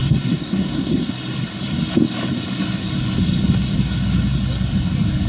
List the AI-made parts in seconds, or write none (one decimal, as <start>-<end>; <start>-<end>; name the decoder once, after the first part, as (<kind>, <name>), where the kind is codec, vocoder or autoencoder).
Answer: 0.0-1.1 (codec, SNAC)